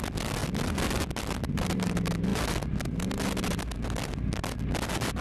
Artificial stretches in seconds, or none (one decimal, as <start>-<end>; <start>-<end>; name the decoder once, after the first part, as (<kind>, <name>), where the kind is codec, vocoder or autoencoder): none